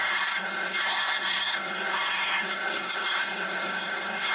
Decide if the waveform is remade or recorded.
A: remade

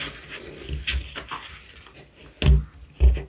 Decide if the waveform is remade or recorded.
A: recorded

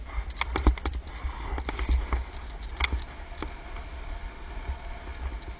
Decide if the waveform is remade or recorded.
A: recorded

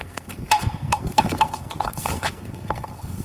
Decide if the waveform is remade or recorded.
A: remade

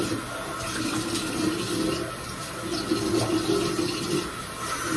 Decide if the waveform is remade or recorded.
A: recorded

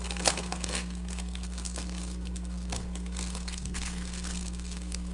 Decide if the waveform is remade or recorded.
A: remade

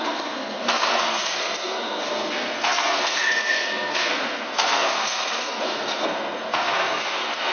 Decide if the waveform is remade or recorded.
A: remade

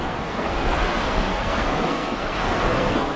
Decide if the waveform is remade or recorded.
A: remade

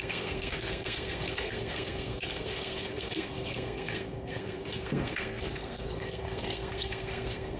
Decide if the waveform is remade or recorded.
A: remade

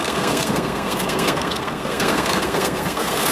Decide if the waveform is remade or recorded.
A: remade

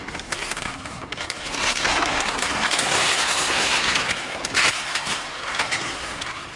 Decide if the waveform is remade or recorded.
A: remade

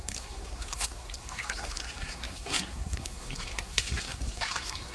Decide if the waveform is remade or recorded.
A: remade